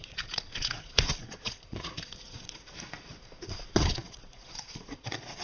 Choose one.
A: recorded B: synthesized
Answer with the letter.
B